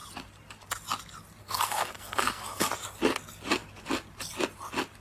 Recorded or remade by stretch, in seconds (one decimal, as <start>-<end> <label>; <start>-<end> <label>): 0.0-1.4 recorded; 1.4-2.7 remade; 2.7-5.0 recorded